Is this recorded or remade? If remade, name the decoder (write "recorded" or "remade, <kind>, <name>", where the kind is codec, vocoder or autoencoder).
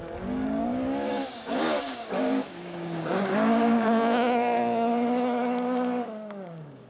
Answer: remade, codec, DAC